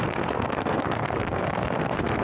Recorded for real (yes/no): no